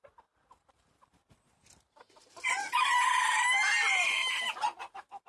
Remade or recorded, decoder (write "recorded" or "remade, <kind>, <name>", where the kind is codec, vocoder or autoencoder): remade, vocoder, BigVGAN v2